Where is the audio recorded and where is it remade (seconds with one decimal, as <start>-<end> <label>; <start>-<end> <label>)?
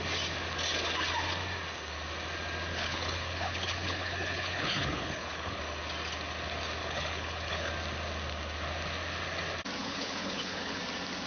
0.0-2.7 recorded; 2.7-5.6 remade; 5.6-6.8 recorded; 6.8-7.7 remade; 7.7-9.8 recorded; 9.8-10.8 remade; 10.8-11.3 recorded